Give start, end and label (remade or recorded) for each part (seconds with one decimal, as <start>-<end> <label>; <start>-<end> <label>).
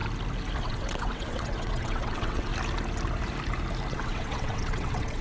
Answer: 0.0-0.6 recorded; 0.6-2.5 remade; 2.5-3.9 recorded; 3.9-5.2 remade